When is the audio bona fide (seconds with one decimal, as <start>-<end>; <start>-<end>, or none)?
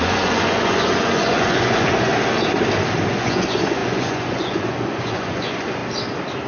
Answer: 2.1-3.1; 5.8-6.5